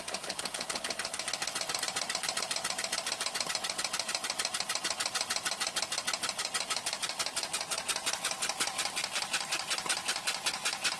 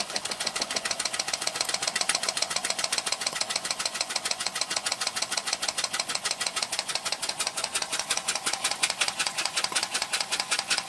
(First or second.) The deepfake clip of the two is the second